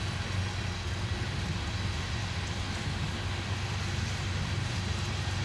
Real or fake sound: real